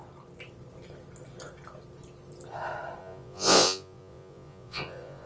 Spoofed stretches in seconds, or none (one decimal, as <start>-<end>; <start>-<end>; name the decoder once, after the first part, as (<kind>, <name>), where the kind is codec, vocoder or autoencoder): 3.0-5.3 (vocoder, Vocos)